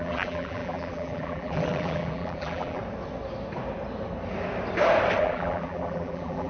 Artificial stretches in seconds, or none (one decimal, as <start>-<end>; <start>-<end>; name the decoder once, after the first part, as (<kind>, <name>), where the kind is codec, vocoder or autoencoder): 0.0-2.8 (vocoder, BigVGAN v2); 5.2-6.5